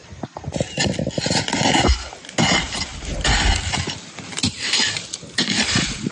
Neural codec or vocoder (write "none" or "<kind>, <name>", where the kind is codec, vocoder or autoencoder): none